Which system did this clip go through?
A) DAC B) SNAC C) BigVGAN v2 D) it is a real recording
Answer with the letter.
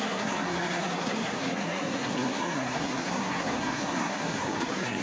B